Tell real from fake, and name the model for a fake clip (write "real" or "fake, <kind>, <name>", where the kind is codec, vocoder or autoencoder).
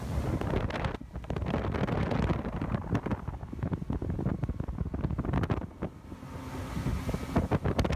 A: real